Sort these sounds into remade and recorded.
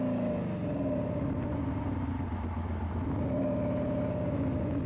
recorded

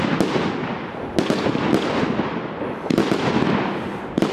recorded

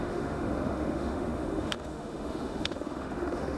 remade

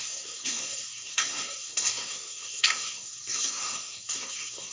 remade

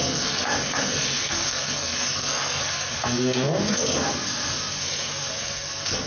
remade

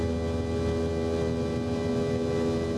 recorded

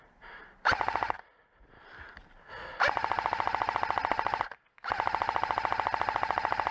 remade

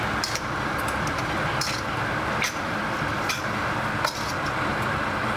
remade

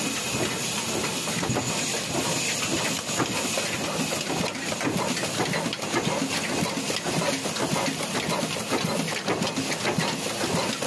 recorded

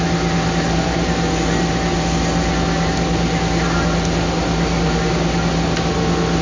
recorded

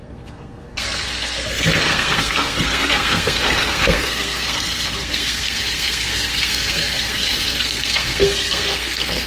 remade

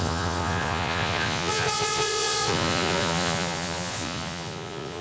remade